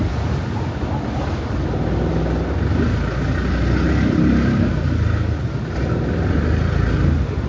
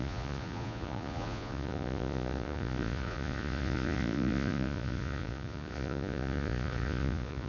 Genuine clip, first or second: first